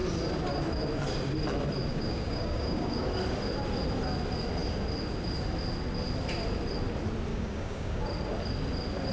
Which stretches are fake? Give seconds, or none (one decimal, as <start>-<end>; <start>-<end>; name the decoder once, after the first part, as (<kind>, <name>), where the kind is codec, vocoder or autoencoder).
1.9-3.1 (codec, DAC); 7.3-8.0